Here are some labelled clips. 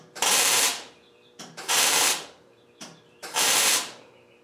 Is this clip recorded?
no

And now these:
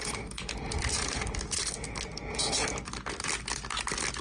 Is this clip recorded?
yes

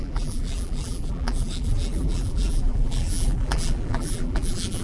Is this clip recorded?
no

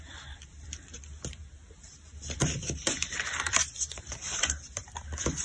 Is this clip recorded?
no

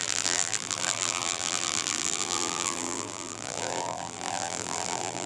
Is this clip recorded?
no